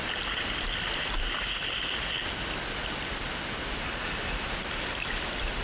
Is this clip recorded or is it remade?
recorded